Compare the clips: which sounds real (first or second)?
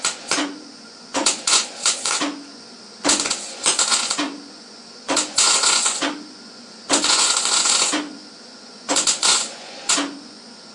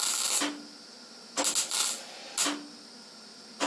second